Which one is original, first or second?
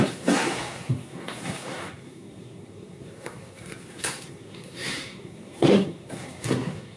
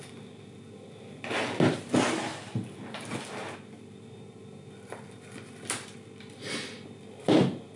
second